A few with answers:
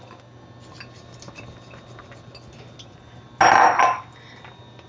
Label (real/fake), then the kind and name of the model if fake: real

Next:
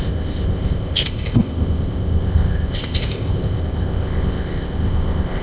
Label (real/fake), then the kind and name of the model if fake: fake, codec, ZipCodec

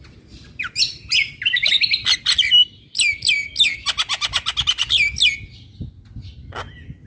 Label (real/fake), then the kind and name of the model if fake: real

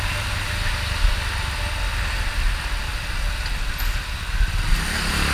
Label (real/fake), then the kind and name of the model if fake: real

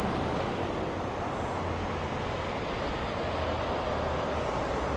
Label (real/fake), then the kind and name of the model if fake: real